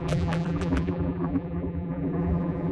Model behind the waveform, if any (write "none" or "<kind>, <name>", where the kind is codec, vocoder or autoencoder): vocoder, BigVGAN v2